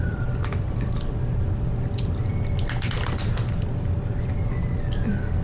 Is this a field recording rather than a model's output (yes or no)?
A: yes